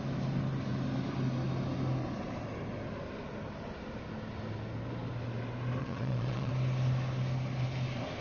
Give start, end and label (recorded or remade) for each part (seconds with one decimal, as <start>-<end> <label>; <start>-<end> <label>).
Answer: 0.0-5.8 recorded; 5.8-6.5 remade; 6.5-8.2 recorded